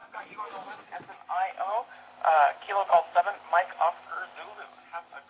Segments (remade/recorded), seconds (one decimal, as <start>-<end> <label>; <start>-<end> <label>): 0.0-5.3 recorded